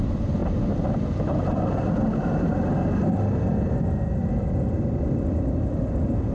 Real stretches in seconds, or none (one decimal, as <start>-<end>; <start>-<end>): 0.0-6.3

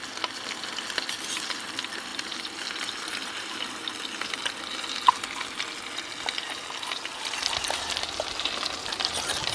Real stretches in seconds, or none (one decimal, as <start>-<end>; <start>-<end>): 0.0-9.5

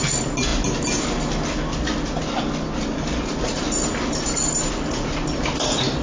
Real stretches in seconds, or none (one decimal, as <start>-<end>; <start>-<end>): 0.0-6.0

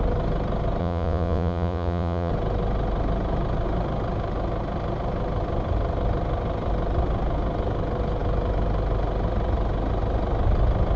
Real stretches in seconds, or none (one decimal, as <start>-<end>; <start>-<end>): 0.0-0.8; 2.3-11.0